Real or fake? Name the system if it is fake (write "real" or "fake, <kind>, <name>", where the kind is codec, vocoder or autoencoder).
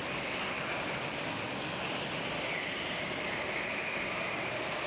real